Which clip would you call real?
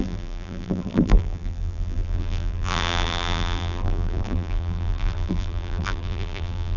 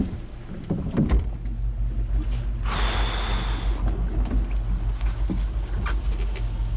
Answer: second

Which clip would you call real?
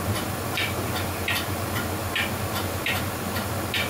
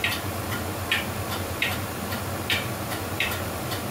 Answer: first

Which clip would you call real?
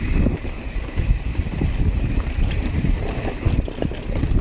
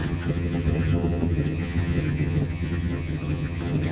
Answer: first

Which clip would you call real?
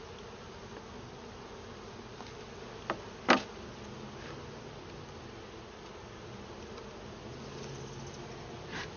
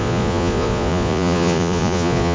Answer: first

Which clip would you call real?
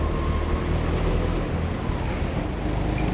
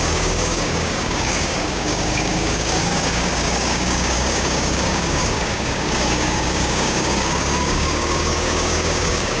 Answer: first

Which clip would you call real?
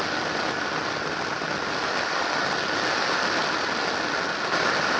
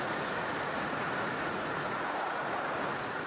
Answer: first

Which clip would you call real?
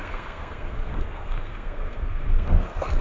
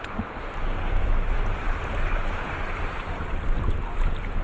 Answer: second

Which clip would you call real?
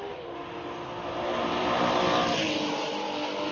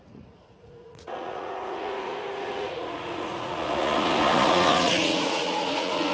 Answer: first